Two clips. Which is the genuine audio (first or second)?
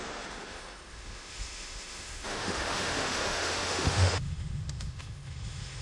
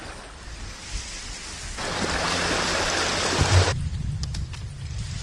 second